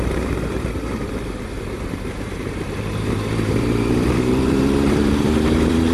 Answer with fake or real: fake